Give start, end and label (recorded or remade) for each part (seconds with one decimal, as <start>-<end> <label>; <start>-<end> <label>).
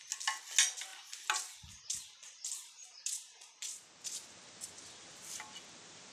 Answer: 0.0-6.1 recorded